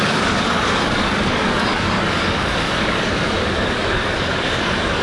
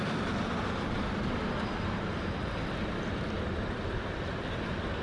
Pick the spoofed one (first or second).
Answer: first